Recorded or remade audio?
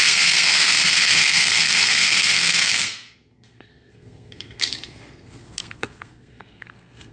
remade